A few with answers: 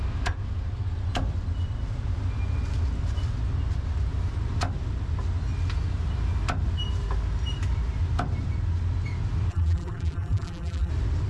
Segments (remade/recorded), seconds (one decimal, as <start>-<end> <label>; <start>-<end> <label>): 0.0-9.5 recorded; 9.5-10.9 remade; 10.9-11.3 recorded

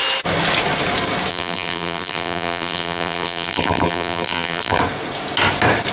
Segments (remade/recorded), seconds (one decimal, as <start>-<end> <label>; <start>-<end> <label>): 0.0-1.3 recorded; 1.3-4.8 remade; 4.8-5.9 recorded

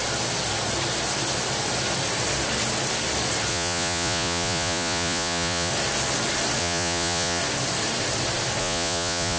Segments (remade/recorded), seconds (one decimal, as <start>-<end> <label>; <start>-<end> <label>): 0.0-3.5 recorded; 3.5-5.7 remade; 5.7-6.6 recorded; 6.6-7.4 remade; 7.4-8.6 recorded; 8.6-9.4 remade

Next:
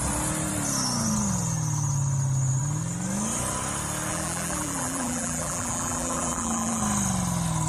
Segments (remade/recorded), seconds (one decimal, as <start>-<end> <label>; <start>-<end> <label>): 0.0-4.1 recorded; 4.1-6.8 remade; 6.8-7.7 recorded

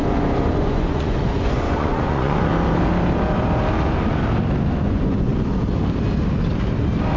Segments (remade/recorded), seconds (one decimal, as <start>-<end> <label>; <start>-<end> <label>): 0.0-2.5 remade; 2.5-4.7 recorded; 4.7-5.3 remade; 5.3-7.2 recorded